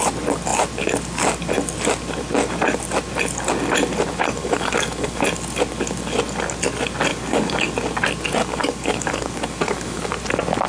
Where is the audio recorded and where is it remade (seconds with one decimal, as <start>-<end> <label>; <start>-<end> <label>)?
0.0-4.4 recorded; 4.4-5.2 remade; 5.2-7.1 recorded; 7.1-7.7 remade; 7.7-8.4 recorded; 8.4-10.1 remade; 10.1-10.7 recorded